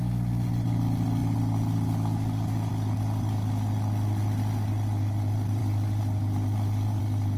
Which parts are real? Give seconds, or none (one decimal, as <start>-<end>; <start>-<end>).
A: 0.0-7.4